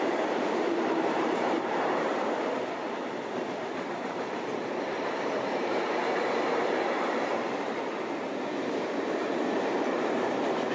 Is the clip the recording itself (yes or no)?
no